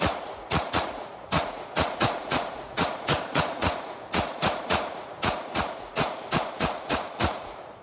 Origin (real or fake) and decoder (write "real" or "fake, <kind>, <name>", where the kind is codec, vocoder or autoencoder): fake, vocoder, Vocos